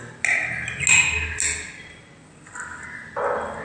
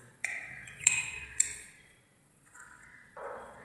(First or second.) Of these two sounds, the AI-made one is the second